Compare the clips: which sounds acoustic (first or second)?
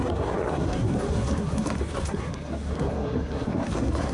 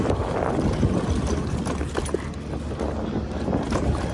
second